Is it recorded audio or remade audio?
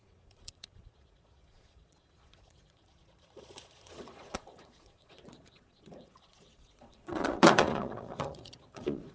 remade